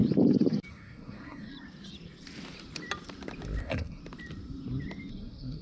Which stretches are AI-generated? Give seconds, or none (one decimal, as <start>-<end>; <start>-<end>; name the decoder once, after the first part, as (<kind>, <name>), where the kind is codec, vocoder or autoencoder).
0.7-1.5 (codec, SNAC); 3.6-4.0; 5.1-5.6